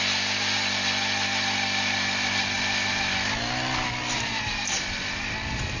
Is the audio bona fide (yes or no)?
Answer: yes